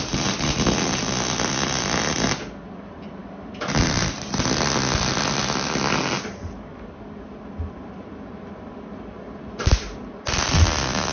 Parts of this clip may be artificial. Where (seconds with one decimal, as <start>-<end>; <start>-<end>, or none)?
3.2-5.4; 6.7-10.4